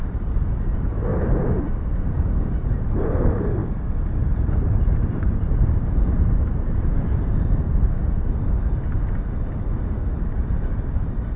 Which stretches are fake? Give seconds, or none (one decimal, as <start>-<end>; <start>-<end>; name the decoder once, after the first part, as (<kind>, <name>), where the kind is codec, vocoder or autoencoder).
0.0-1.1 (vocoder, BigVGAN v2); 2.4-8.0; 10.4-11.4